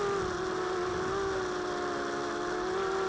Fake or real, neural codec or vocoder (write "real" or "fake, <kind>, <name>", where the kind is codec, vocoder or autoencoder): real